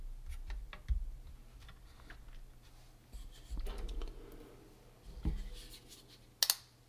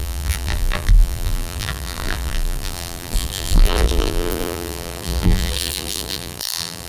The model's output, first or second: second